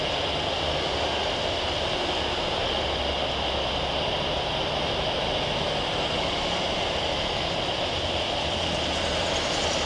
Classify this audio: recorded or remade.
recorded